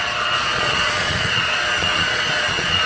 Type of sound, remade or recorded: remade